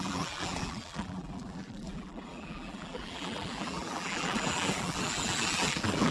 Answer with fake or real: fake